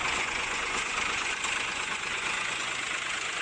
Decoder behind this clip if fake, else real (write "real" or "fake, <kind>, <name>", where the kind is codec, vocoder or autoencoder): fake, vocoder, Vocos